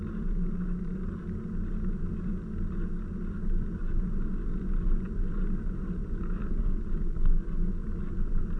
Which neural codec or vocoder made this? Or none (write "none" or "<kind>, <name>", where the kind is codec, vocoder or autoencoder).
none